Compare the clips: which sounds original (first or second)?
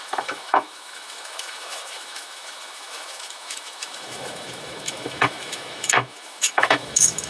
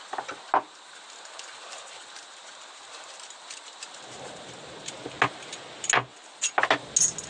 second